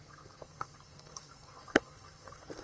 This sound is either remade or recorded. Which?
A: remade